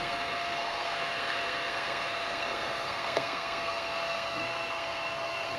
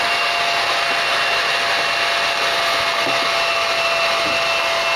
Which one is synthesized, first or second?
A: first